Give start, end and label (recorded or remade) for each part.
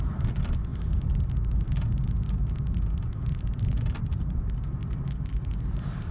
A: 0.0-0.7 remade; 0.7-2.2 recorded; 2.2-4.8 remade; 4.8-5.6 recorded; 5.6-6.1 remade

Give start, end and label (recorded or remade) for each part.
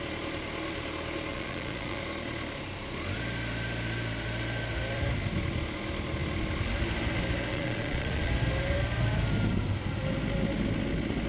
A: 0.0-1.3 recorded; 1.3-2.0 remade; 2.0-7.5 recorded; 7.5-8.3 remade; 8.3-11.3 recorded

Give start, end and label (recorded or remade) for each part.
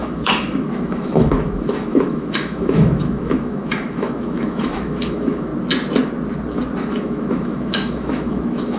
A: 0.0-5.5 remade; 5.5-6.9 recorded; 6.9-8.8 remade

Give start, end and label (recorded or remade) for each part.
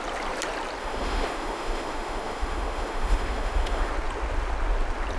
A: 0.0-0.8 recorded; 0.8-3.9 remade; 3.9-5.2 recorded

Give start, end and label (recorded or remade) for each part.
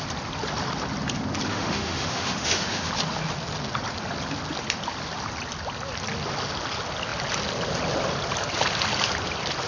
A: 0.0-1.5 recorded; 1.5-2.9 remade; 2.9-9.7 recorded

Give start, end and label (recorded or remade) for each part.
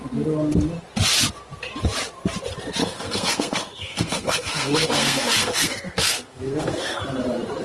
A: 0.0-2.8 recorded; 2.8-7.0 remade; 7.0-7.6 recorded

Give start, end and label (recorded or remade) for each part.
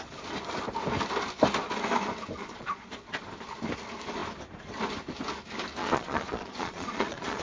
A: 0.0-2.4 recorded; 2.4-3.1 remade; 3.1-5.8 recorded; 5.8-7.4 remade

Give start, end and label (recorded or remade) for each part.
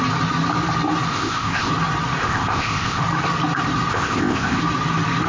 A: 0.0-1.1 recorded; 1.1-1.7 remade; 1.7-2.2 recorded; 2.2-3.0 remade; 3.0-3.9 recorded; 3.9-4.6 remade; 4.6-5.3 recorded